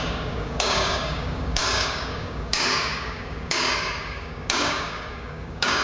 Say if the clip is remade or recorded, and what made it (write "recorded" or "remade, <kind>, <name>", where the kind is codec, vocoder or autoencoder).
remade, codec, DAC